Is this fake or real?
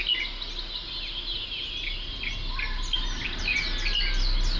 real